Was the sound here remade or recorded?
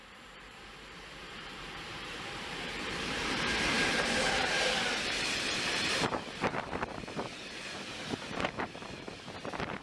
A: remade